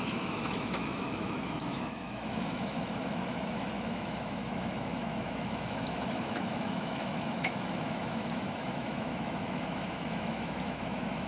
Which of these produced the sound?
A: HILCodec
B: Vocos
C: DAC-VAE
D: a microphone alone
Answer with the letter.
C